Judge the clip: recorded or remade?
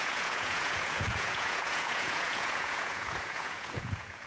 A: remade